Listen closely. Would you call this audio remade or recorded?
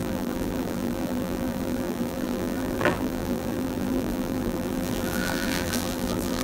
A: remade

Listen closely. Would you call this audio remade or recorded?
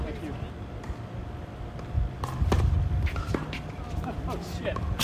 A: recorded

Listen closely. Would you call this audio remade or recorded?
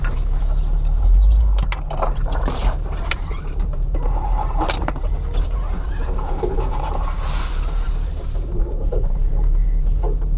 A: remade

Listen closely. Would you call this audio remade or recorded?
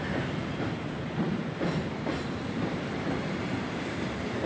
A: remade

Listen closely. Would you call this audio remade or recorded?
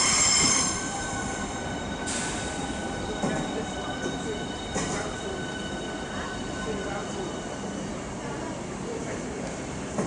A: remade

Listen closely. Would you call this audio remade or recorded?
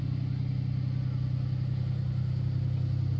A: recorded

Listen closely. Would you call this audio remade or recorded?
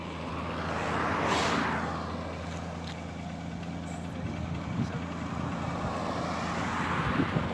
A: recorded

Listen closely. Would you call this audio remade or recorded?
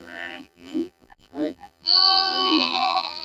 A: remade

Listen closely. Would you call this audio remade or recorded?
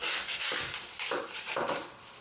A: remade